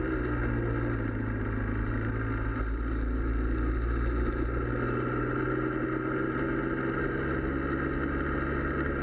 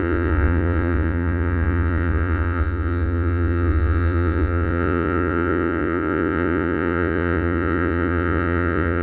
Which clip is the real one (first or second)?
first